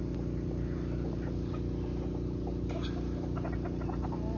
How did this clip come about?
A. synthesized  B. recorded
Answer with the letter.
B